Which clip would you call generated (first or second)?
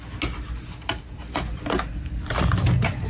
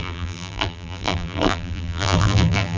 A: second